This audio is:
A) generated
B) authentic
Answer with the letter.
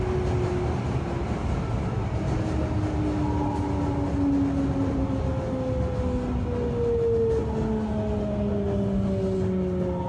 B